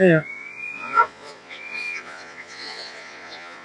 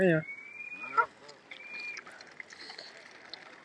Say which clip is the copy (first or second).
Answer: first